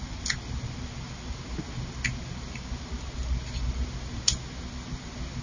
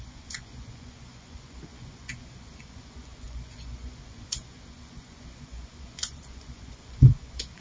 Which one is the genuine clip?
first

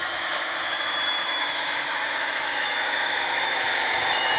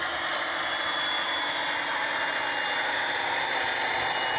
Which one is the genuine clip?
second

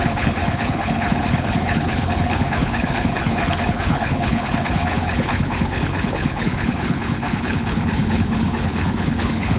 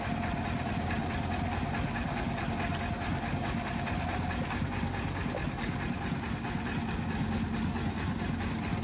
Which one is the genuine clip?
second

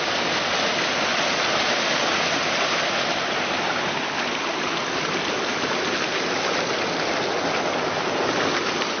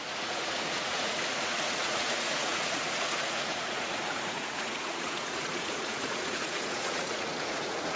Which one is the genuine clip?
first